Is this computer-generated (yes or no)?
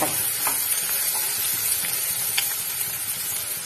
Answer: no